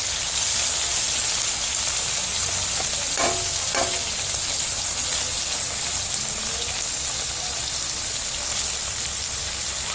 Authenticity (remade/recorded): recorded